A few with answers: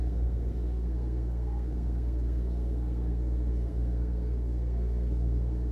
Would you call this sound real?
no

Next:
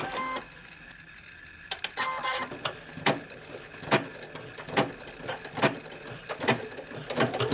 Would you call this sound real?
yes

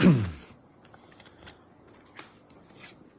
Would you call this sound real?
yes